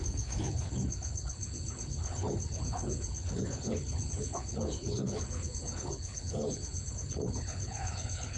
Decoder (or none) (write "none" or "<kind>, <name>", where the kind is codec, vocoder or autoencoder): codec, HILCodec